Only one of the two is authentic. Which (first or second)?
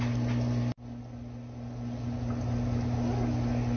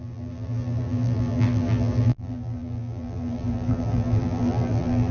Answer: first